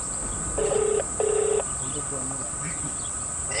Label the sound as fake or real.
real